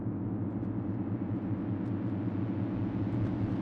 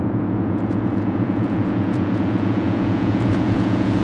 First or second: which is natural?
first